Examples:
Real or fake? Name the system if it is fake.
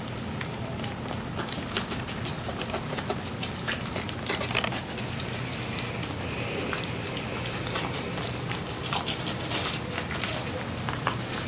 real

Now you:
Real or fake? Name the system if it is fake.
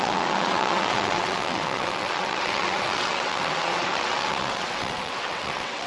fake, vocoder, WaveNeXt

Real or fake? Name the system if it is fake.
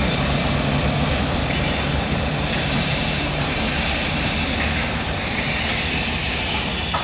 real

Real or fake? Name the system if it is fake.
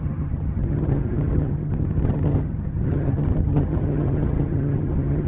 fake, vocoder, HiFi-GAN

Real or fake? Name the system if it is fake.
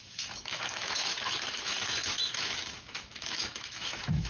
fake, autoencoder, DAC-VAE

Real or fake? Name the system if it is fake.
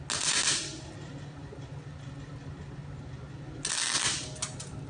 real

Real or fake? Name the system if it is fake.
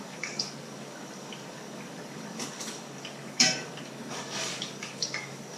fake, codec, DAC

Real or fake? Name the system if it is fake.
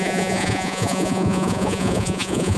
fake, vocoder, Vocos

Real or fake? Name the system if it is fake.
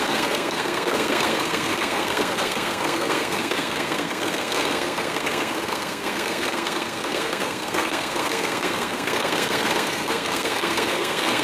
fake, codec, SNAC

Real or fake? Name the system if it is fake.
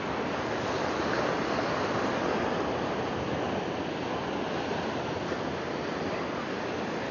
real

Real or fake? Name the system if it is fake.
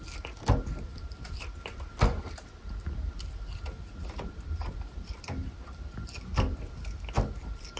real